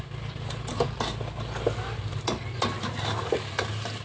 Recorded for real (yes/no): yes